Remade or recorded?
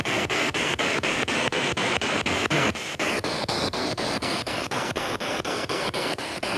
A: remade